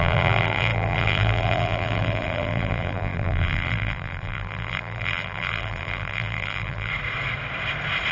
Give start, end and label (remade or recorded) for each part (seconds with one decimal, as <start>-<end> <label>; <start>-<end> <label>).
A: 0.0-6.9 remade; 6.9-8.1 recorded